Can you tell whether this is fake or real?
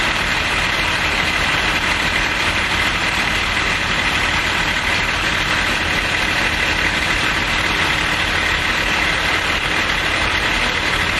fake